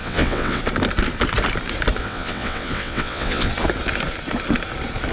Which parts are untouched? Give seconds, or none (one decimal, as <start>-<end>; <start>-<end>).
0.6-2.0; 3.5-5.1